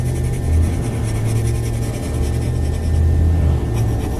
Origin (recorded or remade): remade